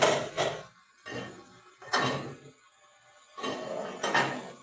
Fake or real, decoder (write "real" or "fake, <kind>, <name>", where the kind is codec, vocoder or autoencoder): real